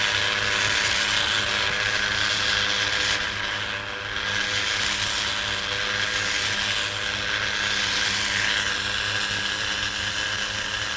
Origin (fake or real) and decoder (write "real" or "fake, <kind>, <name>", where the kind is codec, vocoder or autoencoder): real